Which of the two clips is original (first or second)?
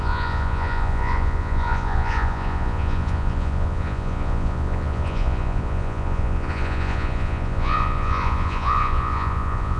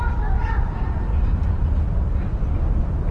second